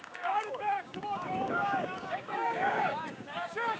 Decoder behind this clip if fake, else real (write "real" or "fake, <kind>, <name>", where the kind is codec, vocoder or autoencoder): fake, codec, DAC